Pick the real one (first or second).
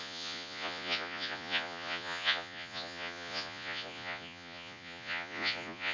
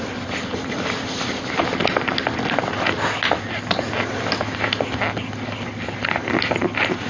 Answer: second